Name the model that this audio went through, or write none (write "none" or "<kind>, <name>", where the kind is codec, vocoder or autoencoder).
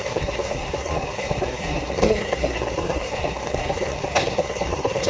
codec, SNAC